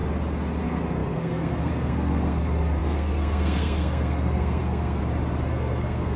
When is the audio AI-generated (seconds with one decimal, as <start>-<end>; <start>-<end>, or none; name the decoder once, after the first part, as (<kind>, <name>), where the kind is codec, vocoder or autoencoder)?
0.6-5.0 (codec, SNAC); 5.5-6.2